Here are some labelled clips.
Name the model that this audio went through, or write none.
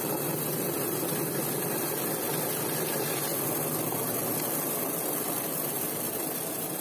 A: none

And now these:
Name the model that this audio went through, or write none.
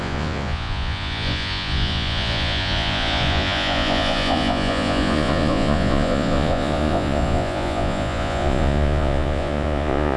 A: vocoder, Vocos